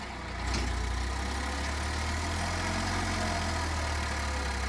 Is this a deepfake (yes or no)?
no